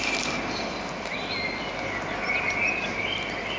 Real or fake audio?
real